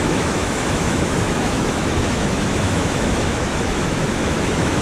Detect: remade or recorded remade